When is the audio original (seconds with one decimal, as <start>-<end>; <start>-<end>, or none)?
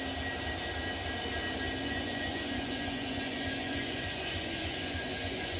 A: 0.0-1.8